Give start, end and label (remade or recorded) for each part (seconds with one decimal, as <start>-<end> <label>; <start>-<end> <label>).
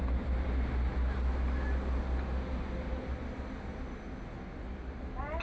0.0-5.4 recorded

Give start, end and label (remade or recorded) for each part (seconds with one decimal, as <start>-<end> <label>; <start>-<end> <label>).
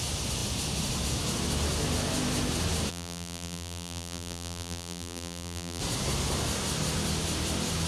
0.0-2.9 recorded; 2.9-5.8 remade; 5.8-7.9 recorded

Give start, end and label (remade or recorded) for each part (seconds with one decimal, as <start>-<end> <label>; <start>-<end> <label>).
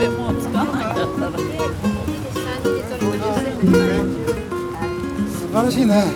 0.0-0.6 recorded; 0.6-2.5 remade; 2.5-3.4 recorded; 3.4-4.2 remade; 4.2-5.7 recorded; 5.7-6.2 remade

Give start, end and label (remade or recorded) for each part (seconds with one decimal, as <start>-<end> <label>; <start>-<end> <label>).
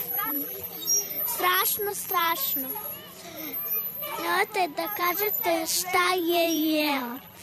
0.0-0.8 remade; 0.8-1.9 recorded; 1.9-2.3 remade; 2.3-5.0 recorded; 5.0-7.4 remade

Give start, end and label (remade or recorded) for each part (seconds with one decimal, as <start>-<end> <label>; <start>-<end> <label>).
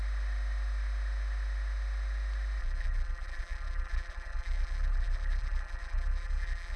0.0-2.6 recorded; 2.6-6.8 remade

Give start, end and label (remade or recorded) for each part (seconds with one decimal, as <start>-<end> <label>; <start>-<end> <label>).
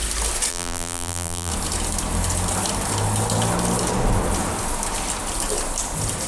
0.0-0.5 recorded; 0.5-1.5 remade; 1.5-6.3 recorded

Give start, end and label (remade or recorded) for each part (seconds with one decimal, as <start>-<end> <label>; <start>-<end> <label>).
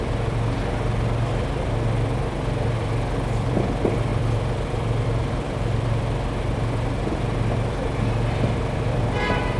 0.0-9.6 remade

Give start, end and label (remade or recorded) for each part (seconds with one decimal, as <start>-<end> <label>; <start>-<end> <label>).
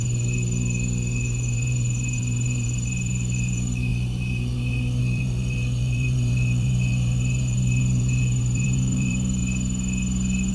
0.0-9.4 remade; 9.4-10.5 recorded